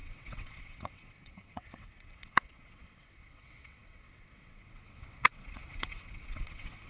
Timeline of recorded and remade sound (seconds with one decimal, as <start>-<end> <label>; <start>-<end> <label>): 0.0-6.9 remade